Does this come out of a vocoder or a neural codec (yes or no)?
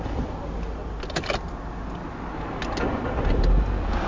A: no